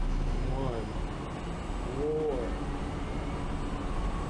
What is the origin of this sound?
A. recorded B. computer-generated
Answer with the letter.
A